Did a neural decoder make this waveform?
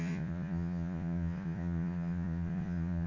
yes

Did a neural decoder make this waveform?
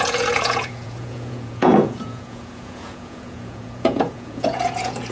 yes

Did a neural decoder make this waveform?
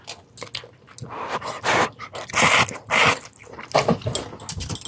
no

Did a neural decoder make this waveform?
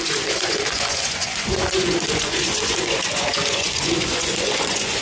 yes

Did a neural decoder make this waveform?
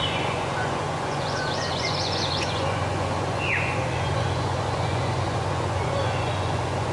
yes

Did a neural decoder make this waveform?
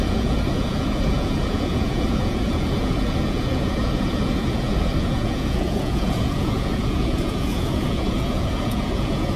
yes